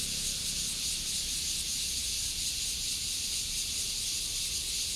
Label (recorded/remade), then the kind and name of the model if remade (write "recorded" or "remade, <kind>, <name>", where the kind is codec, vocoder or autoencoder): recorded